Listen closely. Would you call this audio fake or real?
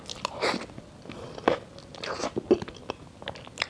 real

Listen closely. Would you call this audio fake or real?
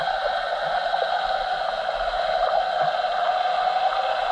real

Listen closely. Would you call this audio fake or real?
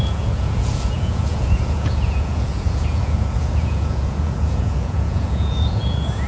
fake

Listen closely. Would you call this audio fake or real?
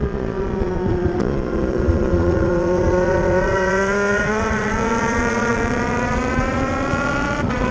fake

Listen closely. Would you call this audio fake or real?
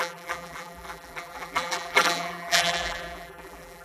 fake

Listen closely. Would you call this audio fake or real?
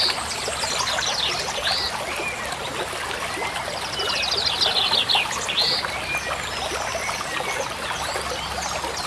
real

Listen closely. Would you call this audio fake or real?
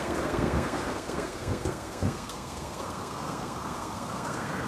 fake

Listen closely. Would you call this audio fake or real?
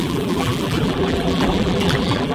fake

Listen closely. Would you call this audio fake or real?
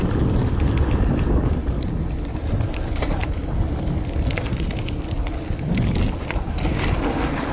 real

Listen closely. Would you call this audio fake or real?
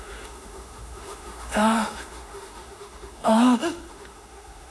fake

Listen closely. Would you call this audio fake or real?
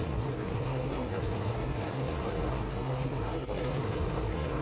fake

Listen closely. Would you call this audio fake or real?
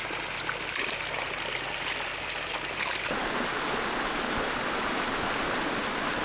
real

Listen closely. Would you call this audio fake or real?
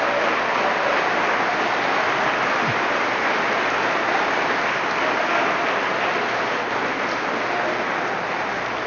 real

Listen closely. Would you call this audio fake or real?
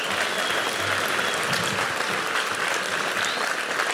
real